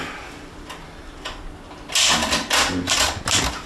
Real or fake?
real